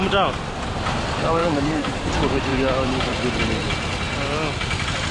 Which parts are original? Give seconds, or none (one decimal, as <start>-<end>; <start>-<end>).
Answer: 0.0-1.4; 2.1-5.1